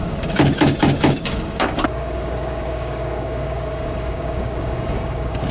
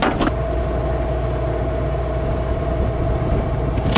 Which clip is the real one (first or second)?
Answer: second